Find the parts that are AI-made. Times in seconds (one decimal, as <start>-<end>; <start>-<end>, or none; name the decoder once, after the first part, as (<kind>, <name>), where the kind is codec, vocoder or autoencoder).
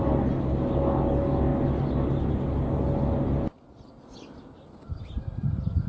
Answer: none